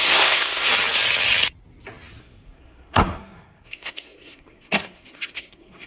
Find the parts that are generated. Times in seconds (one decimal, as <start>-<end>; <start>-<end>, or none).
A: 0.0-0.7; 2.2-5.9